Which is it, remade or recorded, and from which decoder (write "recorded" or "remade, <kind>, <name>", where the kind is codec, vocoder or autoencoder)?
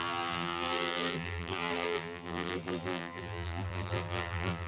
remade, vocoder, BigVGAN v2